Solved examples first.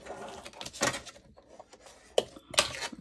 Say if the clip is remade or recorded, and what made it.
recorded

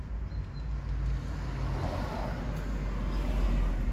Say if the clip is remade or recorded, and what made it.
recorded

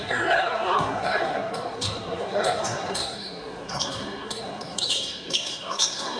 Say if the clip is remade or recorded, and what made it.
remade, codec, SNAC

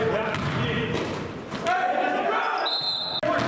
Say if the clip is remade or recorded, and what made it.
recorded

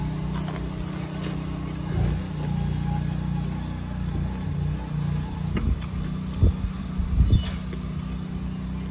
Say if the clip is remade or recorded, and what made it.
recorded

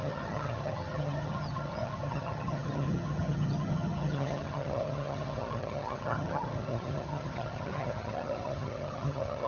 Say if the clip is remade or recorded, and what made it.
remade, vocoder, HiFi-GAN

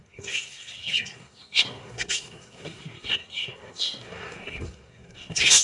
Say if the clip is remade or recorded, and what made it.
remade, codec, SNAC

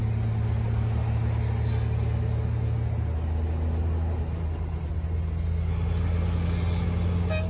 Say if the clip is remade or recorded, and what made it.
recorded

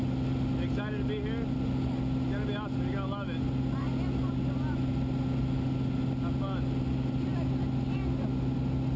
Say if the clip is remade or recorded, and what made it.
recorded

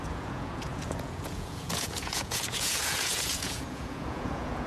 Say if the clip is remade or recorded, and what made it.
remade, vocoder, Vocos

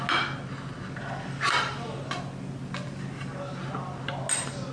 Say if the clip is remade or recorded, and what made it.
recorded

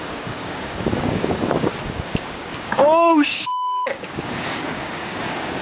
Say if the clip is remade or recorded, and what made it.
remade, codec, DAC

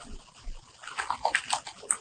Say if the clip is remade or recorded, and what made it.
recorded